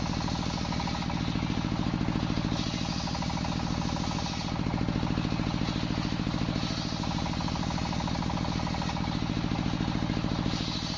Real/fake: real